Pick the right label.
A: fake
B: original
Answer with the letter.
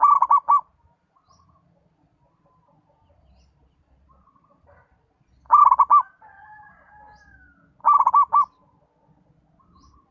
B